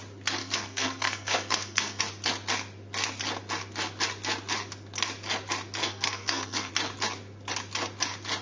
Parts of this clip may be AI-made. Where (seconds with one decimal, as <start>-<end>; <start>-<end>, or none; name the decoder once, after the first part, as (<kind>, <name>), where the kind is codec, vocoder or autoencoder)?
0.4-2.0 (codec, SNAC); 5.8-6.7